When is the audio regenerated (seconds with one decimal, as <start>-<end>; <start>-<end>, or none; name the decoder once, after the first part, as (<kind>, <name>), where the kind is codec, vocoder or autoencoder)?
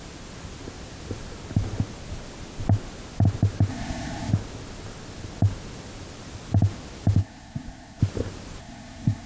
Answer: 3.7-4.3 (codec, SNAC); 7.2-8.0; 8.6-9.3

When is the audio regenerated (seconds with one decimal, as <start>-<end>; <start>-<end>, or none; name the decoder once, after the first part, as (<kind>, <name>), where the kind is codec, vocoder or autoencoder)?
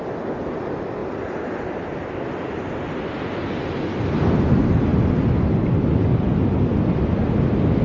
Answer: none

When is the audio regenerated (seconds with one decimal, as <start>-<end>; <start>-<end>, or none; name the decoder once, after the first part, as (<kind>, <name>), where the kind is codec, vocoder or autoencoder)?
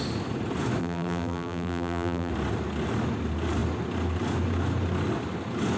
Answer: 0.8-2.3 (vocoder, BigVGAN v2)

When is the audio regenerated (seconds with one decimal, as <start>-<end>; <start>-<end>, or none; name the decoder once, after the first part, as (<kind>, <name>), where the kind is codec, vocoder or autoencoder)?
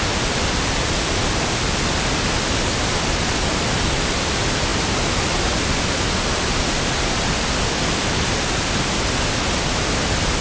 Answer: none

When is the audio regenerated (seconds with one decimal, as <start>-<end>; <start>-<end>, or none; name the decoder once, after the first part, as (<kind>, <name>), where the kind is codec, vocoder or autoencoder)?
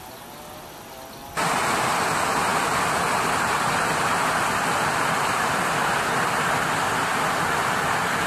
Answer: none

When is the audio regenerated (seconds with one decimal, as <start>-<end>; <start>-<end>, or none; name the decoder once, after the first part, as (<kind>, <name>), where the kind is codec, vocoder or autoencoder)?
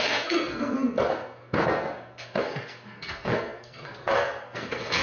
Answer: 0.0-5.0 (codec, SNAC)